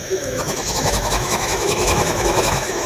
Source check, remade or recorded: remade